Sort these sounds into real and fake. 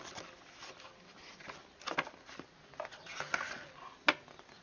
real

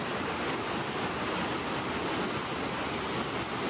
real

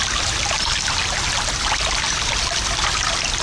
real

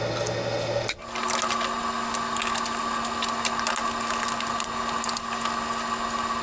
real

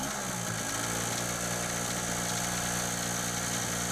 real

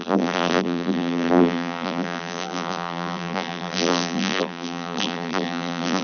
fake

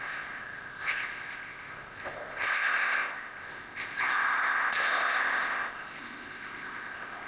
fake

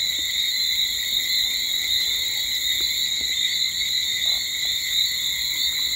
real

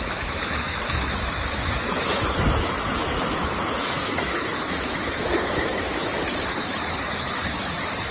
fake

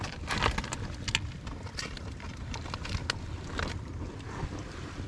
real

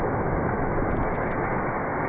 fake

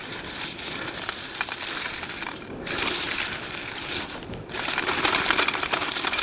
real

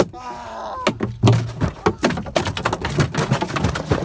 real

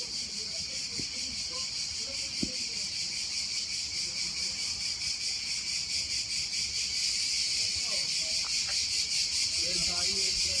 real